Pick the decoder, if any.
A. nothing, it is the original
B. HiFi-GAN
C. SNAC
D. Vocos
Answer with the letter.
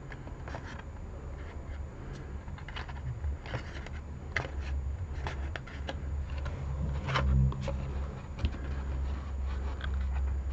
A